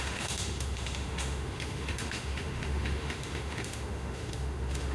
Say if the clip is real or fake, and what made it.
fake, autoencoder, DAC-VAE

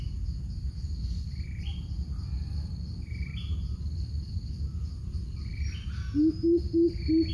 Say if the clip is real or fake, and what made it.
real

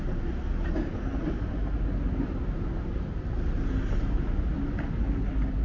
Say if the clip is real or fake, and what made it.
real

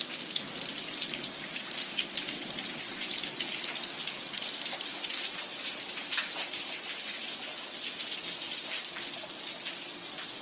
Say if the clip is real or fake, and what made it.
real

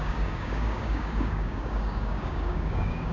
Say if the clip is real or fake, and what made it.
fake, codec, DAC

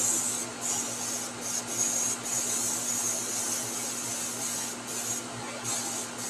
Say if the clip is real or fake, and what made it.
real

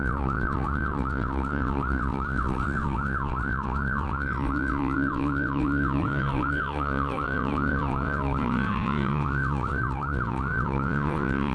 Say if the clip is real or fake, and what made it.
fake, vocoder, WaveNeXt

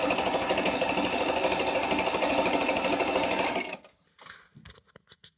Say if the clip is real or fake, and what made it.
real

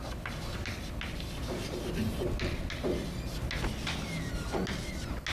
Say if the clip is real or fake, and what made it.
real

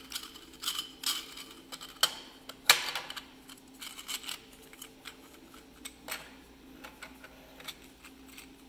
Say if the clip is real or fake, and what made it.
real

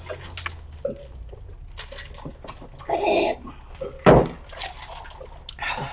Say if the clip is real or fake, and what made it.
real